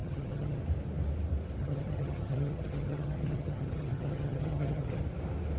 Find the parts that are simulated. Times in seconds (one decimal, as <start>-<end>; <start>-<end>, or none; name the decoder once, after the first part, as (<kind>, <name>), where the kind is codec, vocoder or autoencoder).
0.0-0.6 (vocoder, HiFi-GAN); 1.6-5.0